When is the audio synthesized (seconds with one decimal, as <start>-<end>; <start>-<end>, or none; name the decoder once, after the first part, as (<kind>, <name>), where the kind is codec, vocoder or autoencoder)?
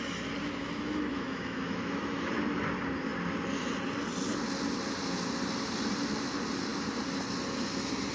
0.4-2.3 (autoencoder, DAC-VAE)